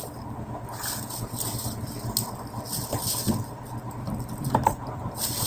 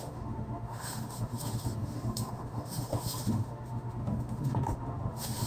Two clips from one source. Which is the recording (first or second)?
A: first